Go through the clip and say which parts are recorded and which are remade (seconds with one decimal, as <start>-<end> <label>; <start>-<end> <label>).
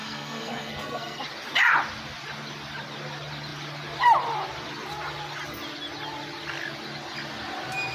0.0-1.2 remade; 1.2-7.9 recorded